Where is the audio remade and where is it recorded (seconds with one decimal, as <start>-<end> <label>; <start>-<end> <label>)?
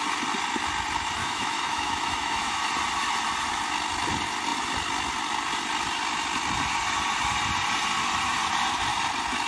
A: 0.0-1.2 recorded; 1.2-2.6 remade; 2.6-9.5 recorded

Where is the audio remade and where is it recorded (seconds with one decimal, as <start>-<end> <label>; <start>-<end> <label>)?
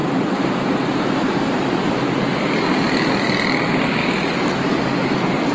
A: 0.0-2.3 remade; 2.3-5.5 recorded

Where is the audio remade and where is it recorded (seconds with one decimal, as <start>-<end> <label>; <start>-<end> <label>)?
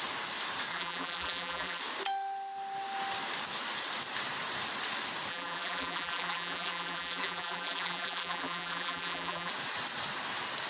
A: 0.0-0.7 recorded; 0.7-1.8 remade; 1.8-5.3 recorded; 5.3-9.5 remade; 9.5-10.7 recorded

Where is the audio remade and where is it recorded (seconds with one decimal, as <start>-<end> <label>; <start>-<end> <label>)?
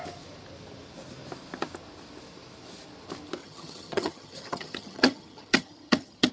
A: 0.0-3.4 recorded; 3.4-6.3 remade